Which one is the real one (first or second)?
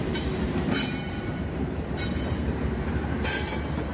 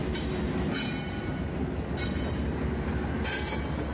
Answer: second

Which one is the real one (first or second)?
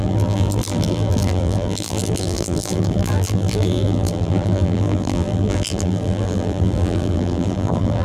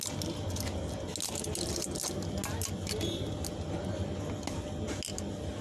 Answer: second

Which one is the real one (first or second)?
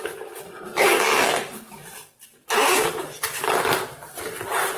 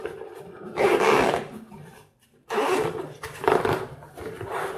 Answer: first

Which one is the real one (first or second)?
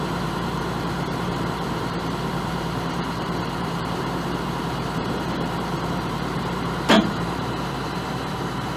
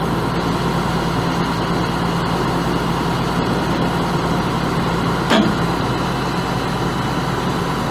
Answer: second